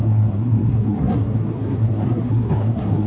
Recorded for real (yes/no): no